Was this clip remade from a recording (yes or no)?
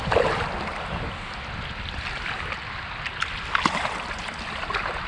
no